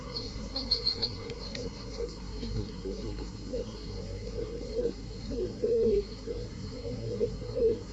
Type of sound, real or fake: fake